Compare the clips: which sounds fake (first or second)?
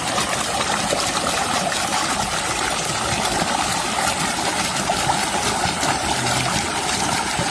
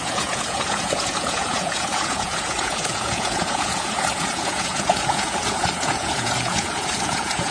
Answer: second